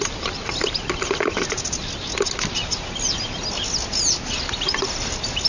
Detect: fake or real real